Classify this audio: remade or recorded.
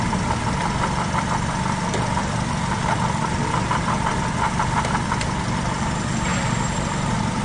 remade